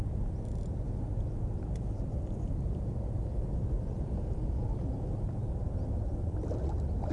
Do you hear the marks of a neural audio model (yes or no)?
yes